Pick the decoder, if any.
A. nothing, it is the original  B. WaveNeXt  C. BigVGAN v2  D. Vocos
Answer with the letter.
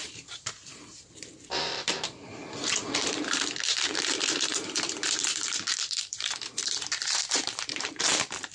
C